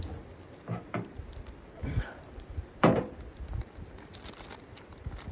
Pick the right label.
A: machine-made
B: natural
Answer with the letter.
B